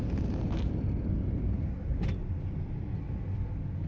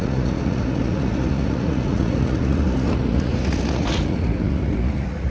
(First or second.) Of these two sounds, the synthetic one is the second